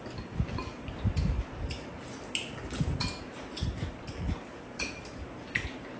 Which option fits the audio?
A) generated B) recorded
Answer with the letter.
B